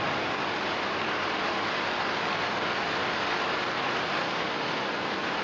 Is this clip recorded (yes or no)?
yes